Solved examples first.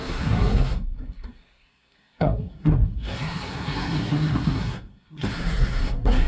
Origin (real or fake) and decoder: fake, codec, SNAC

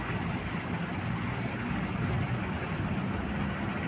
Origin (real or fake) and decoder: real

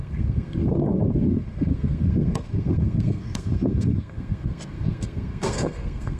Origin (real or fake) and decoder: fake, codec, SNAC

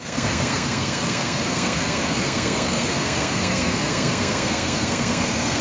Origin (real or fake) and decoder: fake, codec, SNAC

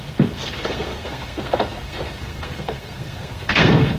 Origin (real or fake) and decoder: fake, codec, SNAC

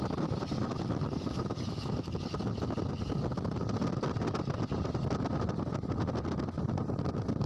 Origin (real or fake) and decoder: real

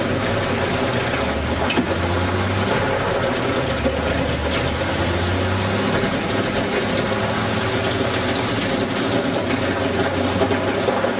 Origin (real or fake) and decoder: real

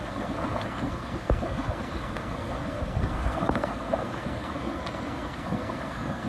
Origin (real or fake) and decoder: fake, codec, SNAC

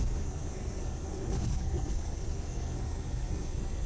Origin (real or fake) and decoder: fake, codec, SNAC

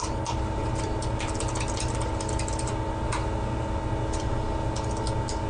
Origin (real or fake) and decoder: real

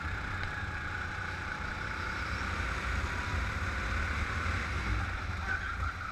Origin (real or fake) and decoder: real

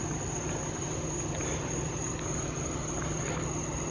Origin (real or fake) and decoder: real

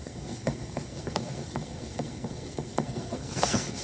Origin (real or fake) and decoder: fake, codec, SNAC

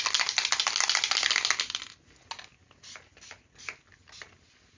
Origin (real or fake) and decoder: real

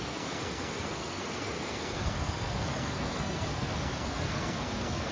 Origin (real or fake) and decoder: fake, codec, SNAC